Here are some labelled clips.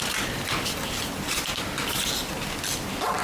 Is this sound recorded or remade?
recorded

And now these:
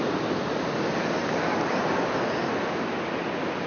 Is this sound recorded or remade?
recorded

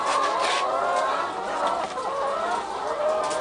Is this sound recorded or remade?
recorded